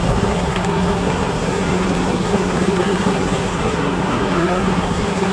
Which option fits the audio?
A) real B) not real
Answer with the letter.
B